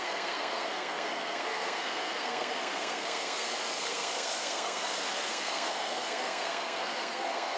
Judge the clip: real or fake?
fake